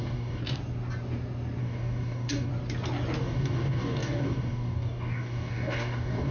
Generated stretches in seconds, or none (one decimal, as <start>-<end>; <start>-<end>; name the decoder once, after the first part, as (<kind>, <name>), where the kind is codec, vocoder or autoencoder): 0.0-0.4 (codec, DAC); 1.6-2.5; 3.2-6.3